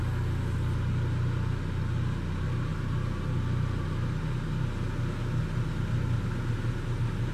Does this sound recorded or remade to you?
recorded